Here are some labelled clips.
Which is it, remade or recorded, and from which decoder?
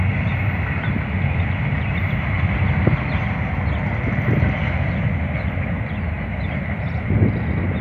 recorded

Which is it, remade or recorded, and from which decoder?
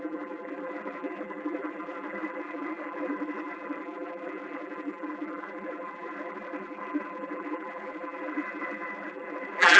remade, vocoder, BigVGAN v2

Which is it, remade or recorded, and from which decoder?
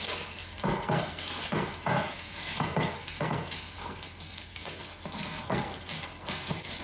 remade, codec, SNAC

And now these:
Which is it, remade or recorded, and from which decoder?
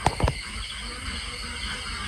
recorded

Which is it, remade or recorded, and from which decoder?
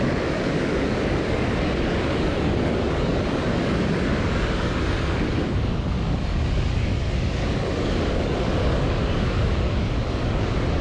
remade, codec, DAC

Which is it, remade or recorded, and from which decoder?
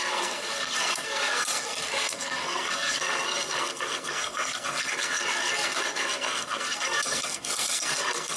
remade, codec, SNAC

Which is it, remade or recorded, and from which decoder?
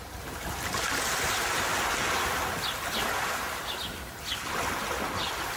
recorded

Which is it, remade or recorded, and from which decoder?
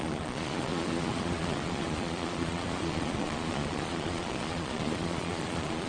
remade, vocoder, Vocos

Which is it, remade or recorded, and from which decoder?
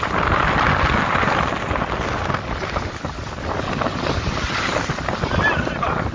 recorded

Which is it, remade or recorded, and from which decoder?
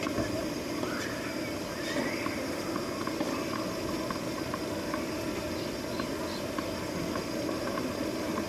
recorded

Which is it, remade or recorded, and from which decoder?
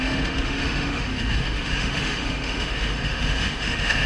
remade, autoencoder, DAC-VAE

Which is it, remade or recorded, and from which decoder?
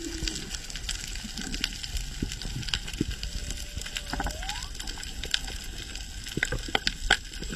recorded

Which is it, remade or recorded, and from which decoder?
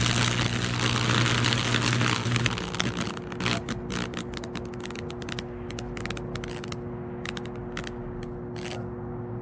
recorded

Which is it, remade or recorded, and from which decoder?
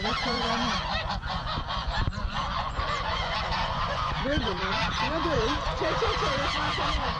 remade, vocoder, Vocos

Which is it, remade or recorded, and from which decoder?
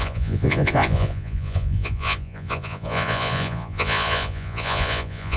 remade, vocoder, Vocos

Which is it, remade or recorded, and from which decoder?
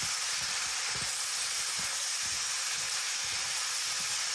recorded